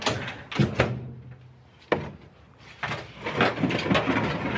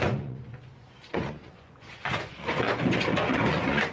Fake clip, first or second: second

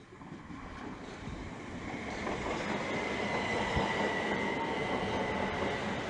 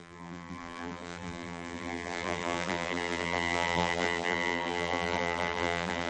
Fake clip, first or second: second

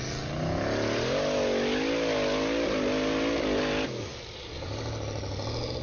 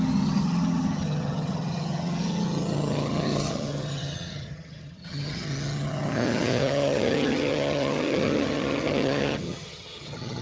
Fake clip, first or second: second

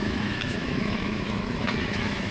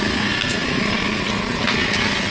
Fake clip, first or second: first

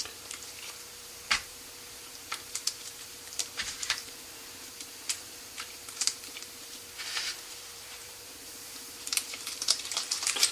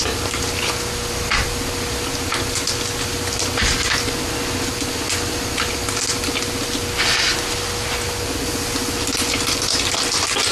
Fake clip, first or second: first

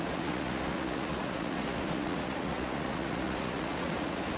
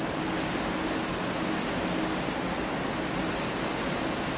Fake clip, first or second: first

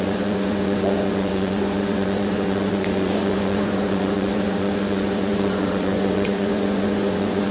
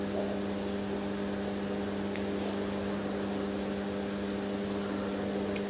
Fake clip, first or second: first